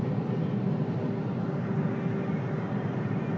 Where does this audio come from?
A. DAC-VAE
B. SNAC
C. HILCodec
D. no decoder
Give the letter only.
D